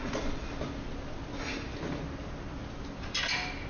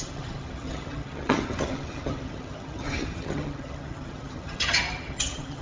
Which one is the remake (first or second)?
second